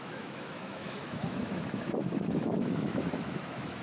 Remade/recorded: remade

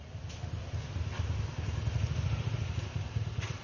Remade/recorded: recorded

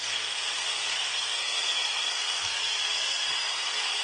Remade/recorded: remade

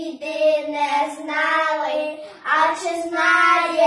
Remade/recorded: recorded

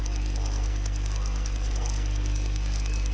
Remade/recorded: remade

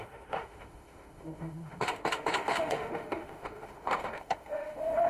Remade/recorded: remade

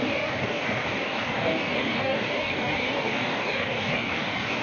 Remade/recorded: remade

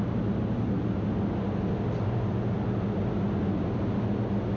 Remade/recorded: recorded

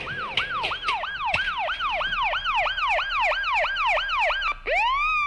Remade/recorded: recorded